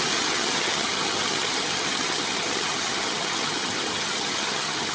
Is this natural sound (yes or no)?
no